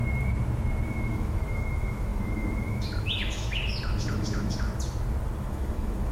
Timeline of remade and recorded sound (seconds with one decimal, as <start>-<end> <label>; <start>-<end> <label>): 0.0-0.9 recorded; 0.9-4.7 remade; 4.7-5.4 recorded; 5.4-6.1 remade